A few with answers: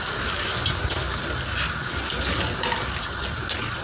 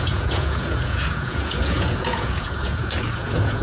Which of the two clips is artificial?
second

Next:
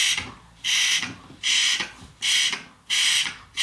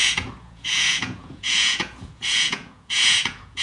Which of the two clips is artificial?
second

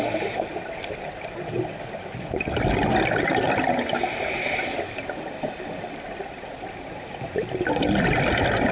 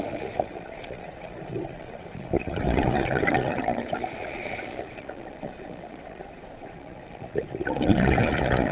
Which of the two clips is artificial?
second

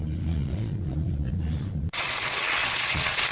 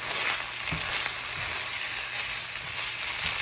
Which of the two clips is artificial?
first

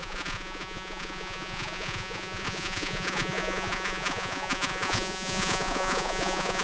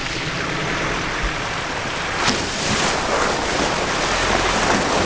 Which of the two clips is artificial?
first